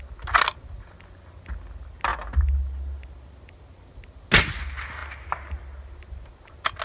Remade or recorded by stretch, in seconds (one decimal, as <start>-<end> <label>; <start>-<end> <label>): 0.0-6.8 recorded